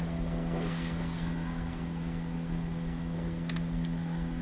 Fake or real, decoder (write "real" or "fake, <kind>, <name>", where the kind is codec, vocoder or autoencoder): fake, codec, SNAC